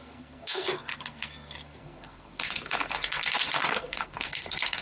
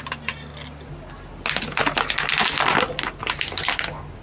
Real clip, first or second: second